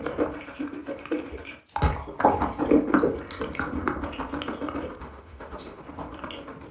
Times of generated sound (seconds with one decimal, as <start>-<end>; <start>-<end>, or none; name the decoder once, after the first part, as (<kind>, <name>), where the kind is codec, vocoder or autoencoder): 5.0-5.8 (autoencoder, DAC-VAE)

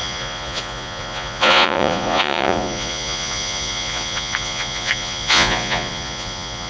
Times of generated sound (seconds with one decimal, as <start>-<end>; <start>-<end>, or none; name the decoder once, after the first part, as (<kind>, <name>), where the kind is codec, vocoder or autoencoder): 0.0-6.7 (vocoder, Vocos)

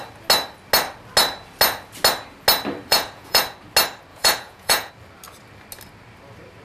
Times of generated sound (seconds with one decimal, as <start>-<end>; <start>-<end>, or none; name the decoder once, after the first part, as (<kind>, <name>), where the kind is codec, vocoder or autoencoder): 2.9-3.4 (vocoder, Vocos); 4.1-4.9

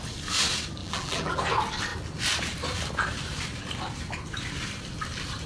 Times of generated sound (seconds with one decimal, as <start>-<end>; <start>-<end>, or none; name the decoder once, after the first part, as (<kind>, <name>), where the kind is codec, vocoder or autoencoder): 0.8-1.4 (vocoder, BigVGAN v2)

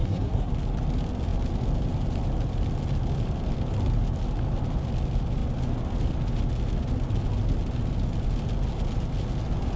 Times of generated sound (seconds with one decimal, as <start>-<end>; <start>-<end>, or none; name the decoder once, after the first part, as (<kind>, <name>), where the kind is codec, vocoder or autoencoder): 0.0-0.5 (codec, SNAC)

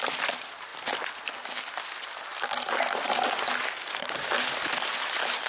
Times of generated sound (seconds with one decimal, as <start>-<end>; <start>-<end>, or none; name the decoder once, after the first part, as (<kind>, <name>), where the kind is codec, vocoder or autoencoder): none

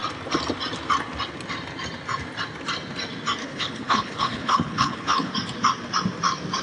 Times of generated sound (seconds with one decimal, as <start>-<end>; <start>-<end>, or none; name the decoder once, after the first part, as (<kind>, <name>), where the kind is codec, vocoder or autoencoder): 3.4-5.3 (codec, HILCodec)

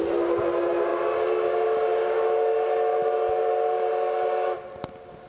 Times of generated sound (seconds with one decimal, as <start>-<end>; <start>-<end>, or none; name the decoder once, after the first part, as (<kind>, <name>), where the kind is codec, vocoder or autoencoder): none